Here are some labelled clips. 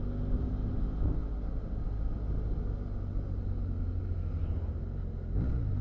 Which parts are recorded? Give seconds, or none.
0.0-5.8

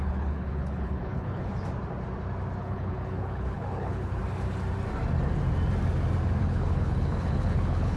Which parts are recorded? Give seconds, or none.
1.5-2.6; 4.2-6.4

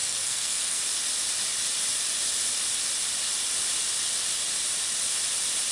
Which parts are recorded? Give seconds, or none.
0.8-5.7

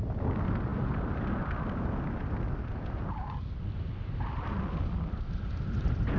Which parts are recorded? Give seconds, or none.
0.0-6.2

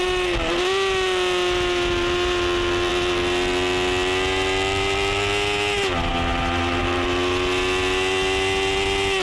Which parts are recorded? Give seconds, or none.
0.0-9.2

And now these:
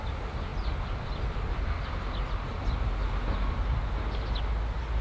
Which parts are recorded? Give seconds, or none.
0.0-5.0

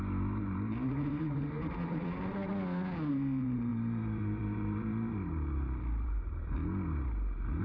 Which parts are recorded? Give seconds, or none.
2.5-3.1; 6.6-7.6